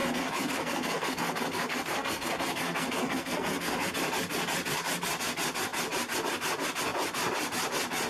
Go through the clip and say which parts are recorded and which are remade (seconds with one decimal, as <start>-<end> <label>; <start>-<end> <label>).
0.0-3.9 remade; 3.9-8.1 recorded